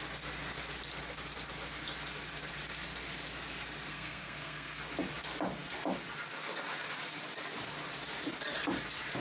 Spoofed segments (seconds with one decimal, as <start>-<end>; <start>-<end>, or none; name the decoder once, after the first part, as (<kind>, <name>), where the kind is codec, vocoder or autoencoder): 3.9-4.8 (codec, SNAC)